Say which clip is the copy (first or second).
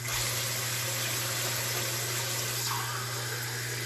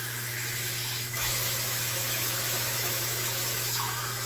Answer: second